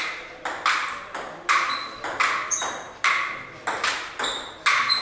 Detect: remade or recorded recorded